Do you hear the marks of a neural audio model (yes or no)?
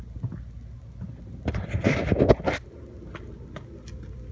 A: no